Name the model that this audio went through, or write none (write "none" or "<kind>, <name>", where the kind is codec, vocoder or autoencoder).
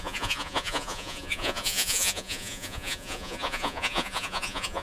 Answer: vocoder, Vocos